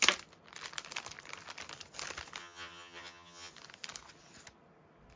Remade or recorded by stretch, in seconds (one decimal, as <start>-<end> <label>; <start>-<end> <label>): 0.0-2.4 recorded; 2.4-3.5 remade; 3.5-5.2 recorded